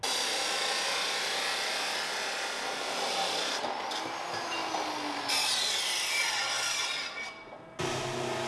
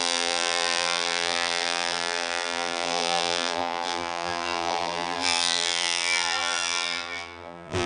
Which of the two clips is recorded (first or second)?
first